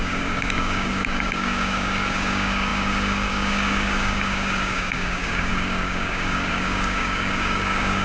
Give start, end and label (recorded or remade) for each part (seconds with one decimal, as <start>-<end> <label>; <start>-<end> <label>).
0.0-8.0 remade